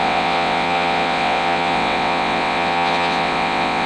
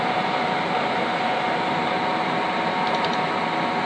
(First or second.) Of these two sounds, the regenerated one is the first